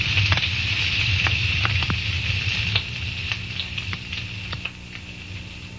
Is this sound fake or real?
real